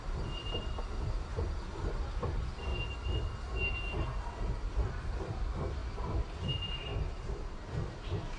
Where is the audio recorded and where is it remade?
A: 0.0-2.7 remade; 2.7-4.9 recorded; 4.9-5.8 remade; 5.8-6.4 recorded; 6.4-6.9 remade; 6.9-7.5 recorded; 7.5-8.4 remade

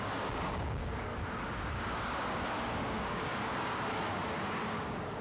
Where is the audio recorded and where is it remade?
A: 0.0-1.1 remade; 1.1-1.7 recorded; 1.7-5.2 remade

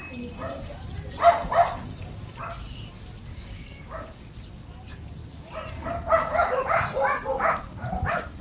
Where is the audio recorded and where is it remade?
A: 0.0-3.3 recorded; 3.3-4.2 remade; 4.2-8.4 recorded

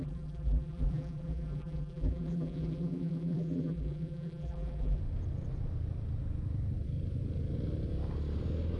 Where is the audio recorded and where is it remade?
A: 0.0-5.0 remade; 5.0-8.8 recorded

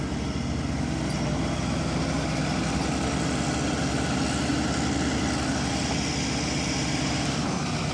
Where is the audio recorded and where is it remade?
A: 0.0-7.9 recorded

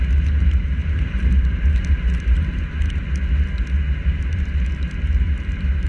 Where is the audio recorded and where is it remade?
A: 0.0-3.0 remade; 3.0-4.0 recorded; 4.0-5.9 remade

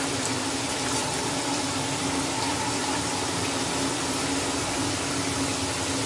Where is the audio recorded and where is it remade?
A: 0.0-6.1 recorded

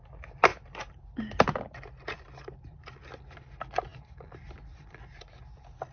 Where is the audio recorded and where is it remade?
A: 0.0-5.9 recorded